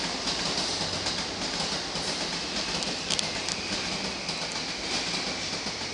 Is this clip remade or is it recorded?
recorded